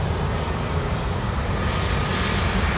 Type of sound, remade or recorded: recorded